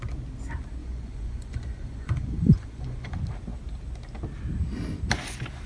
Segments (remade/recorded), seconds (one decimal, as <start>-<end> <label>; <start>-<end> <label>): 0.0-0.8 recorded; 0.8-3.1 remade; 3.1-5.7 recorded